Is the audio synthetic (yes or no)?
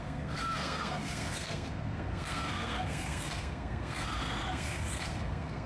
yes